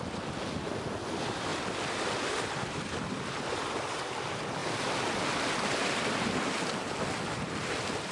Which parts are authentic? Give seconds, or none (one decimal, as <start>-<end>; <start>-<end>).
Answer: 0.0-8.1